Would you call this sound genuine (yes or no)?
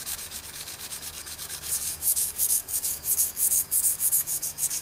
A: no